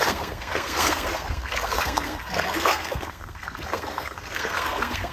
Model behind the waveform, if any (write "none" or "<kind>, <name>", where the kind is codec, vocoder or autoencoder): codec, SNAC